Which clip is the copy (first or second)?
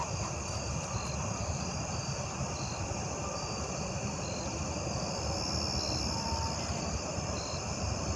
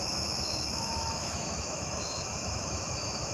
second